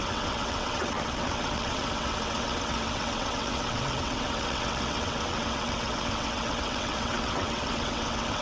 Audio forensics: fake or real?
fake